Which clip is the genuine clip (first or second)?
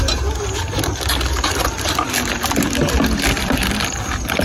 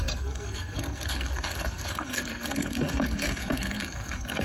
first